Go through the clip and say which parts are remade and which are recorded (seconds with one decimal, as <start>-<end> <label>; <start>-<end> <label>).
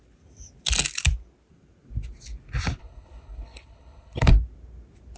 0.0-2.8 recorded; 2.8-4.3 remade; 4.3-5.2 recorded